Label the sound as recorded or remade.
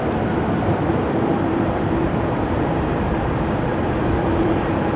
remade